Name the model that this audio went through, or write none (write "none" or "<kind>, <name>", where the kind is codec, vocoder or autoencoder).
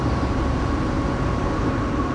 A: vocoder, BigVGAN v2